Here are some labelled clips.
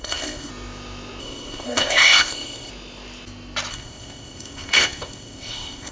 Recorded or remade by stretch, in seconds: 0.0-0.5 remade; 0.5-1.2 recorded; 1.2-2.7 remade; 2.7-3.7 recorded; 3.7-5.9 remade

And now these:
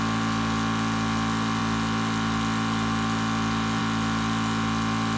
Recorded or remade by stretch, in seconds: 0.0-5.2 recorded

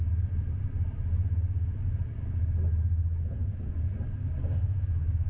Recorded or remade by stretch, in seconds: 0.0-3.1 recorded; 3.1-3.9 remade; 3.9-5.3 recorded

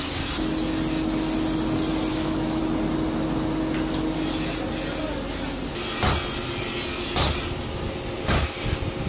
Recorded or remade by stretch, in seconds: 0.0-2.1 recorded; 2.1-2.6 remade; 2.6-9.1 recorded

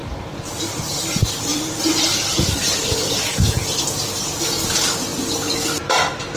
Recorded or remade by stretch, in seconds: 0.0-3.8 remade; 3.8-6.4 recorded